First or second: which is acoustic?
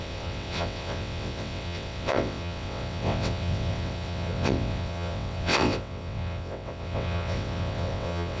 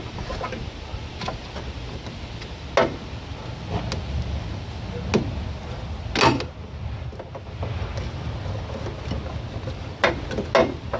second